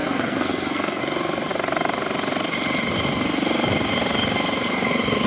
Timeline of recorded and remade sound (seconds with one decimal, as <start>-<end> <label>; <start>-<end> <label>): 0.0-1.0 remade; 1.0-5.3 recorded